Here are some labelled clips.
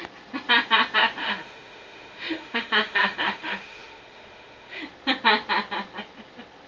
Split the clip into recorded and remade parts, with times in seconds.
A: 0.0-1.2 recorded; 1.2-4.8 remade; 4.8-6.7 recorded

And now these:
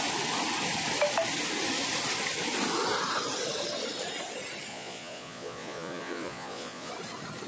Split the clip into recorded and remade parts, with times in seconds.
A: 0.0-4.7 recorded; 4.7-6.9 remade; 6.9-7.5 recorded